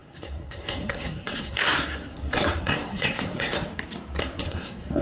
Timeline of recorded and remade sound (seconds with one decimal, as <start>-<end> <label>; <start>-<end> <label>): 0.0-3.7 remade; 3.7-4.2 recorded; 4.2-5.0 remade